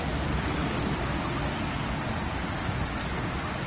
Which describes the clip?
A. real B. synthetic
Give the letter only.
A